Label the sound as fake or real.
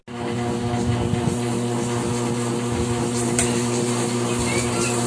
real